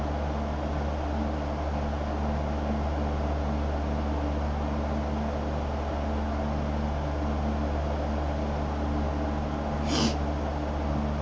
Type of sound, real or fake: real